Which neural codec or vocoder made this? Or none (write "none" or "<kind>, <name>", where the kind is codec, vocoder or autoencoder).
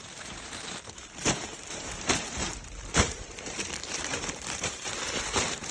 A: vocoder, BigVGAN v2